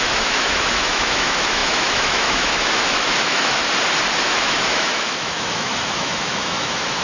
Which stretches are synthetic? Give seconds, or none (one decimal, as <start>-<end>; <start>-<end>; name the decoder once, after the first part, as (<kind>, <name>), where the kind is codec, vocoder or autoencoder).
0.0-3.6 (autoencoder, DAC-VAE); 4.2-7.0